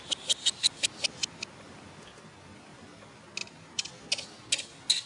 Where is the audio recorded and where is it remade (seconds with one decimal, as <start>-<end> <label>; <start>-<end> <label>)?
0.0-3.4 recorded; 3.4-3.9 remade; 3.9-5.1 recorded

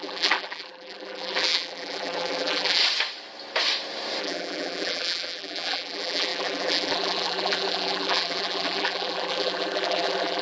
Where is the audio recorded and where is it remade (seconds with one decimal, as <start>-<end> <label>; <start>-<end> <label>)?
0.0-2.8 remade; 2.8-4.2 recorded; 4.2-10.4 remade

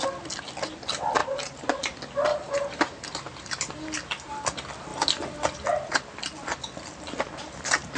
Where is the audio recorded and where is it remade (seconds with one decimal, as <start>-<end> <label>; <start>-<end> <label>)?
0.0-1.2 recorded; 1.2-1.8 remade; 1.8-2.3 recorded; 2.3-3.5 remade; 3.5-8.0 recorded

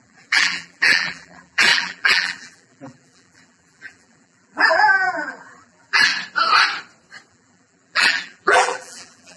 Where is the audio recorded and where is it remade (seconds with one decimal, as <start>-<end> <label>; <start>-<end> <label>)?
0.0-6.1 remade; 6.1-7.3 recorded; 7.3-9.4 remade